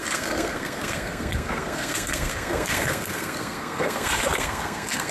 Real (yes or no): no